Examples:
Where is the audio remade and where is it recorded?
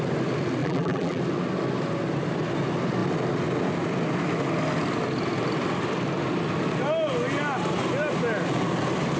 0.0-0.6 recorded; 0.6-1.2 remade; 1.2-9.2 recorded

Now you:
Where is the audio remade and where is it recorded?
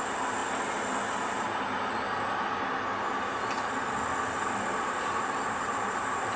0.0-4.7 recorded; 4.7-6.4 remade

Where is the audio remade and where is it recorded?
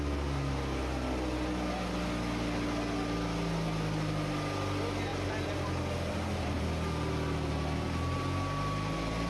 0.0-5.1 recorded; 5.1-6.6 remade; 6.6-9.3 recorded